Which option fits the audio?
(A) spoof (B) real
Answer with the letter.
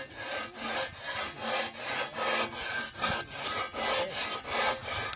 B